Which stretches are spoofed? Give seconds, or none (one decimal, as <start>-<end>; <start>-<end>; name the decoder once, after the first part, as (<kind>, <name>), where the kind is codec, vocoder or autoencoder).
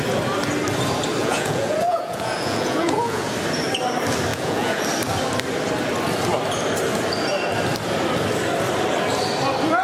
1.2-3.3 (vocoder, Vocos); 4.3-4.8